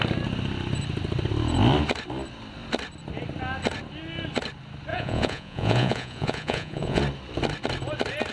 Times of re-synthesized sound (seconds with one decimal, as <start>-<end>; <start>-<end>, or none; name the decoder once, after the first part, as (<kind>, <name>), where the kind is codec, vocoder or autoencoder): 4.9-7.0 (vocoder, Vocos)